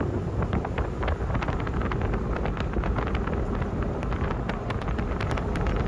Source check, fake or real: real